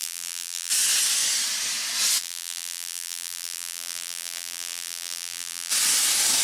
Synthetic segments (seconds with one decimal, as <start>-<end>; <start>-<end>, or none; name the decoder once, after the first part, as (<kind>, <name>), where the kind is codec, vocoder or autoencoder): 0.0-0.7 (vocoder, BigVGAN v2); 2.2-5.7